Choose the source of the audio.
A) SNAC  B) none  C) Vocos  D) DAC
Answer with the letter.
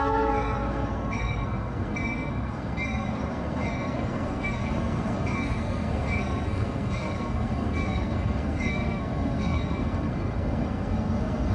A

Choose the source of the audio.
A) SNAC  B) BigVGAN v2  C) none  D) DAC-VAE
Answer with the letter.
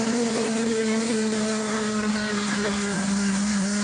A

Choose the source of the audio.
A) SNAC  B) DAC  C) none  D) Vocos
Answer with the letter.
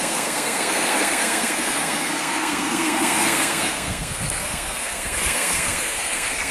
A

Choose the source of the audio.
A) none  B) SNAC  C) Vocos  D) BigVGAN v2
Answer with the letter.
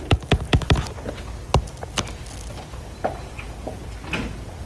A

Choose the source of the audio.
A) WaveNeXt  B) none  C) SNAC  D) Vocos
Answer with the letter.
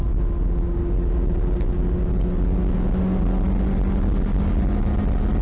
B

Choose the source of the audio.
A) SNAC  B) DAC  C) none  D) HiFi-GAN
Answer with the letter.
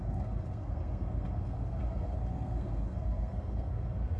A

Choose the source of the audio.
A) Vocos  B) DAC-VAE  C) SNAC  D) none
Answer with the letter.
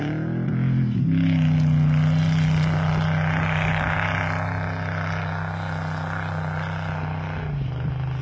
D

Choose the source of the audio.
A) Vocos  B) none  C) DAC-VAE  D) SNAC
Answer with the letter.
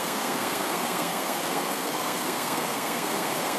D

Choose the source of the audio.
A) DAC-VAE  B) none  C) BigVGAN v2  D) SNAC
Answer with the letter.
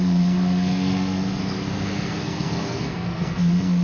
D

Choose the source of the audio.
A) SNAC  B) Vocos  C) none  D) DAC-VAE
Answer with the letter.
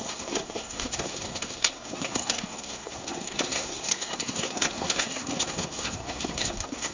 A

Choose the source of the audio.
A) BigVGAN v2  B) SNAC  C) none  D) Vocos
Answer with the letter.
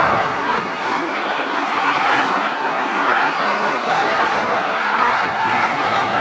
B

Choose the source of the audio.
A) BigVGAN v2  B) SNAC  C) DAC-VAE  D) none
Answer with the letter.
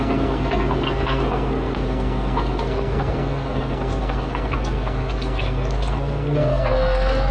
B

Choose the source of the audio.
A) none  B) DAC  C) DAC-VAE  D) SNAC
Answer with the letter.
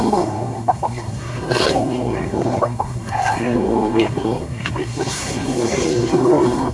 D